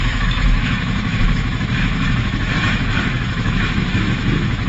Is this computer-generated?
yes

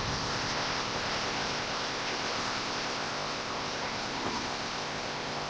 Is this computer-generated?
yes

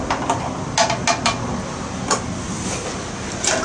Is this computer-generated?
no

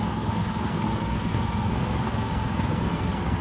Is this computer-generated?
yes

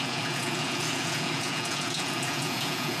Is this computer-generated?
yes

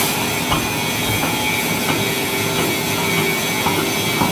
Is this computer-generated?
no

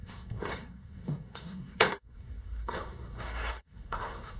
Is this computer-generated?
yes